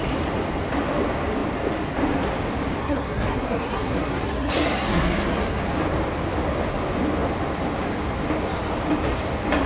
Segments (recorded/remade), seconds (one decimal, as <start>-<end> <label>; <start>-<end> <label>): 0.0-2.8 recorded; 2.8-5.6 remade; 5.6-9.7 recorded